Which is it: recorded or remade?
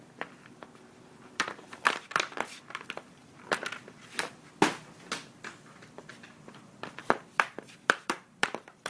remade